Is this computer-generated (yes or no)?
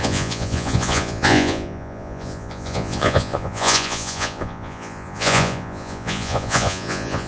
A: yes